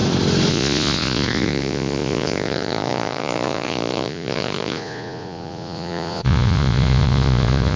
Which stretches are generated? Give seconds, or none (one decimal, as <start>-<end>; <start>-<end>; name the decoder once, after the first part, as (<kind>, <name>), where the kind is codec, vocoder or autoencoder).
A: 0.5-7.8 (vocoder, Vocos)